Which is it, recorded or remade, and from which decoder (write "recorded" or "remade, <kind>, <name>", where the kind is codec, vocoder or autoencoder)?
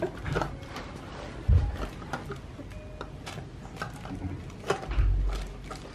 recorded